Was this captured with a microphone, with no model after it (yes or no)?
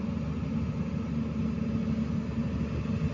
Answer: yes